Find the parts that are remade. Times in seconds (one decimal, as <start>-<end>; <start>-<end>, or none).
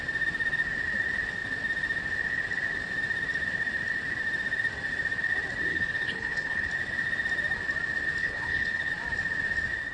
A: 5.7-6.7; 8.2-8.9